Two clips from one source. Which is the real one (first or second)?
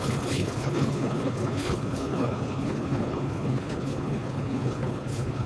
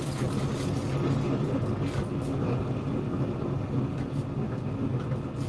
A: second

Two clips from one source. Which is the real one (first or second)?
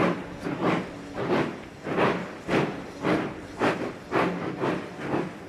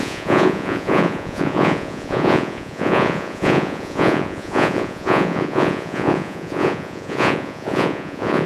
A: first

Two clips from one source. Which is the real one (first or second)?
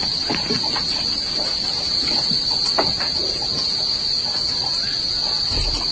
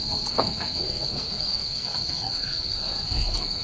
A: first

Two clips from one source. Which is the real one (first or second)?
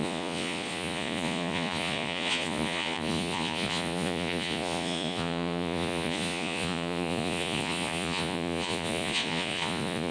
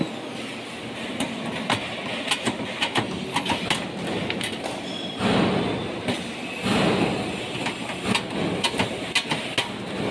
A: second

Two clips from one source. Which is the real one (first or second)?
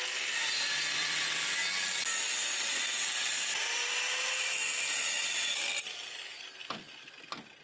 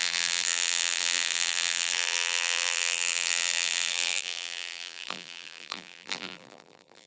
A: first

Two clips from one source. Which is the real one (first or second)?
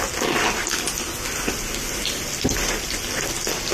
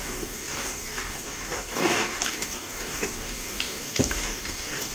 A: first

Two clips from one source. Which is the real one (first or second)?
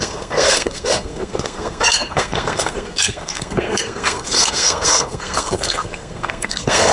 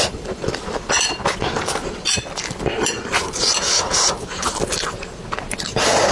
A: second